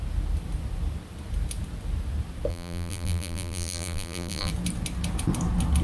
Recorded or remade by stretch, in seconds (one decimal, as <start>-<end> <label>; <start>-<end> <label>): 0.0-2.5 recorded; 2.5-4.5 remade; 4.5-5.8 recorded